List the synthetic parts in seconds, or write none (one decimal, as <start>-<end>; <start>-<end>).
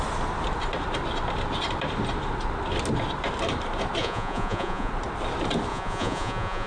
4.0-4.9; 5.7-6.7